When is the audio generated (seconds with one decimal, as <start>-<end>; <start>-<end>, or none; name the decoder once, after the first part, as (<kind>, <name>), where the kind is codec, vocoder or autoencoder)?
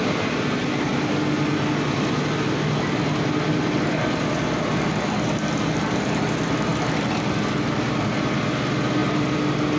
none